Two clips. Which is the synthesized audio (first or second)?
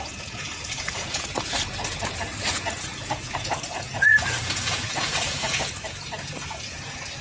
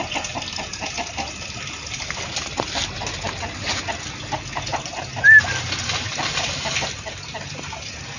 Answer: first